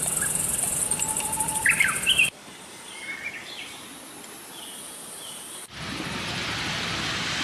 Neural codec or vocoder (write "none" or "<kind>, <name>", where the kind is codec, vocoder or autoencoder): vocoder, BigVGAN v2